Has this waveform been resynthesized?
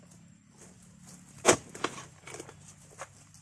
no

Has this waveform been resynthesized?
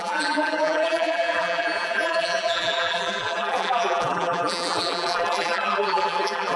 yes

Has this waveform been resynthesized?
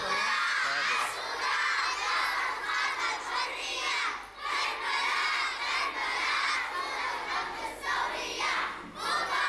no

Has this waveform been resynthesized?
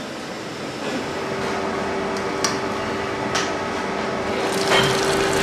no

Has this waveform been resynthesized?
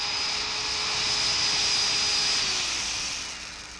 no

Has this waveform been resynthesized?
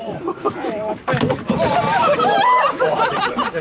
yes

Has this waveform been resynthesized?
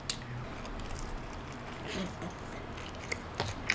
no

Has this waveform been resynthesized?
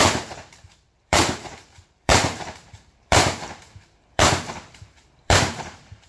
yes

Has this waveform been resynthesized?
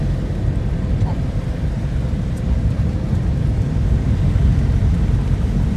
yes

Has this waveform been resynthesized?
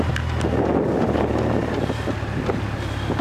no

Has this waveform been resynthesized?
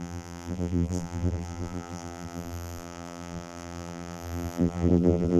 yes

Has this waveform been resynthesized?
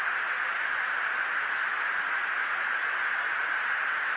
no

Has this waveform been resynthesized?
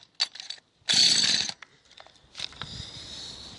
no